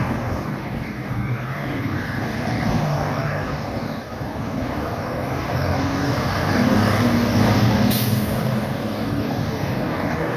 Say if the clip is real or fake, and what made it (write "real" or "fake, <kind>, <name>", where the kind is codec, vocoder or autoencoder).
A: fake, codec, DAC